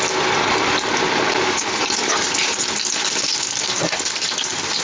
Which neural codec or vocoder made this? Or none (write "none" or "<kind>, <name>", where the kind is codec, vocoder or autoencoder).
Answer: none